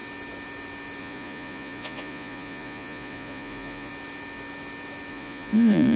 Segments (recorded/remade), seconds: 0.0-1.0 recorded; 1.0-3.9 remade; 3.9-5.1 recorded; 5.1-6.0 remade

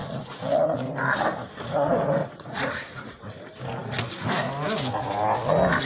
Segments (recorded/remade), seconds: 0.0-0.8 remade; 0.8-2.2 recorded; 2.2-3.2 remade; 3.2-5.9 recorded

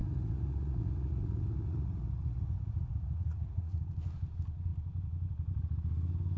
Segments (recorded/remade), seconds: 0.0-3.8 remade; 3.8-6.4 recorded

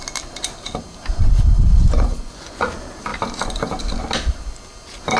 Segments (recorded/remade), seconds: 0.0-1.7 recorded; 1.7-2.6 remade; 2.6-5.2 recorded

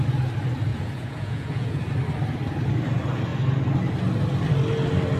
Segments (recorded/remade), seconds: 0.0-0.7 recorded; 0.7-1.8 remade; 1.8-5.2 recorded

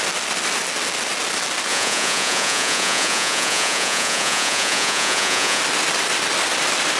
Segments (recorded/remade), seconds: 0.0-1.7 recorded; 1.7-5.6 remade; 5.6-7.0 recorded

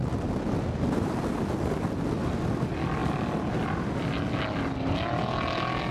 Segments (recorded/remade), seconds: 0.0-5.9 recorded